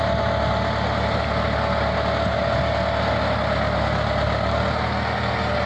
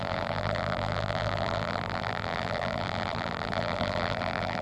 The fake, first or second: second